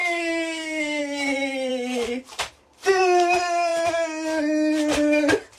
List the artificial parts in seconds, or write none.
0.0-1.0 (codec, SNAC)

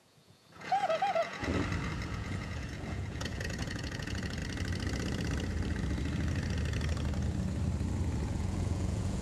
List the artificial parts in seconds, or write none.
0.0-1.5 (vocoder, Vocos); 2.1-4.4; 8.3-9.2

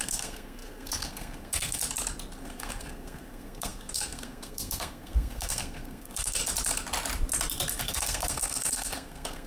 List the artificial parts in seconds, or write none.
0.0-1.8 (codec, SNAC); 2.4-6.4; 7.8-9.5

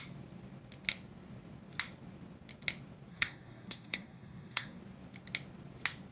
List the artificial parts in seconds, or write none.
3.1-4.8 (codec, SNAC)

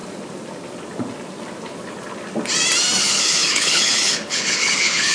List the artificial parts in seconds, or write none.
3.0-5.1 (codec, HILCodec)